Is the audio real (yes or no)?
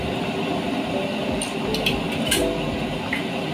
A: yes